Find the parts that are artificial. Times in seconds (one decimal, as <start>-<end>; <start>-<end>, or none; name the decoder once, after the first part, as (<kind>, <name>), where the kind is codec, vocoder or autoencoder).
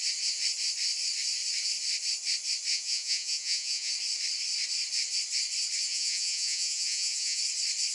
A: 2.7-3.9 (vocoder, Vocos); 5.9-7.4